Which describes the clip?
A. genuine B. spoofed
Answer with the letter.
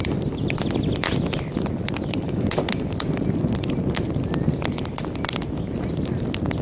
A